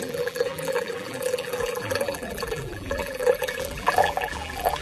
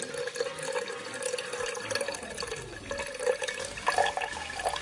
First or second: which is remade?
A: first